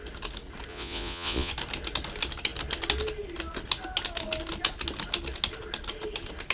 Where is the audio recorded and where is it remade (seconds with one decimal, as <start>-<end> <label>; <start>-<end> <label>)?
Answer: 0.0-0.7 recorded; 0.7-1.5 remade; 1.5-6.5 recorded